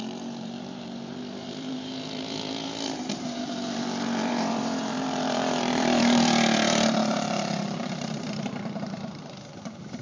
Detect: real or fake fake